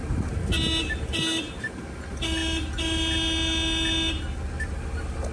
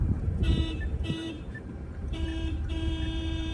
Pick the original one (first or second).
first